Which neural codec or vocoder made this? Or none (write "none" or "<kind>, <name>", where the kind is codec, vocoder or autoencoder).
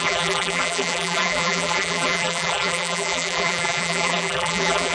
vocoder, BigVGAN v2